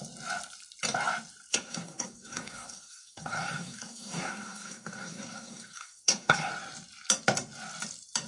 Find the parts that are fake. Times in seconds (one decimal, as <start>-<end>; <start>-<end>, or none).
1.5-6.5